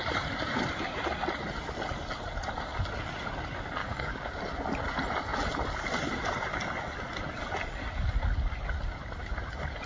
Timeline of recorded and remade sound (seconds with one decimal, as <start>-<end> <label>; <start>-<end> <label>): 0.0-3.8 recorded; 3.8-4.4 remade; 4.4-9.9 recorded